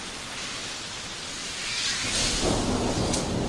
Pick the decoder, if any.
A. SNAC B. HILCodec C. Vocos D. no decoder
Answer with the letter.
D